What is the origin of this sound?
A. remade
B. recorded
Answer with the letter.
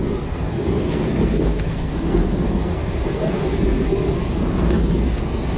A